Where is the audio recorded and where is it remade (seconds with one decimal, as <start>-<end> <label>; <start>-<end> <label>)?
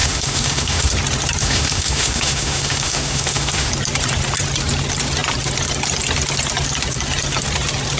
0.0-0.9 remade; 0.9-1.4 recorded; 1.4-3.7 remade; 3.7-8.0 recorded